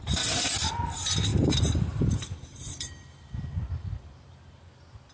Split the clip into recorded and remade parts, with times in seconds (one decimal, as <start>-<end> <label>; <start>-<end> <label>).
0.0-1.3 recorded; 1.3-2.1 remade; 2.1-2.5 recorded; 2.5-3.3 remade; 3.3-5.1 recorded